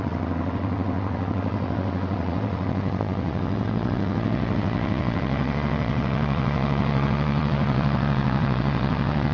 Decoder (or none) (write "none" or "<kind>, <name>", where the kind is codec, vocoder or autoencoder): vocoder, WaveNeXt